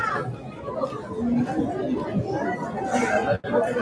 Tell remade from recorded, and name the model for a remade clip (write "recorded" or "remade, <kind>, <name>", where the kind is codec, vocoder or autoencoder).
recorded